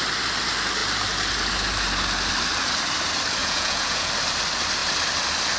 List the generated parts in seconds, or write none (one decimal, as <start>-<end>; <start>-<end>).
3.4-4.1